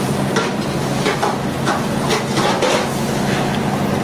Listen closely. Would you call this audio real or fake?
real